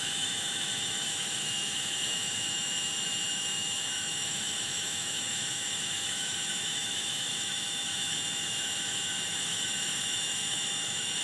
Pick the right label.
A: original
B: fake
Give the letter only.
B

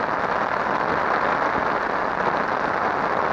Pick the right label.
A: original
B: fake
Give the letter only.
A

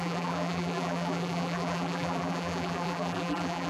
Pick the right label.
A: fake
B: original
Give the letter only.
A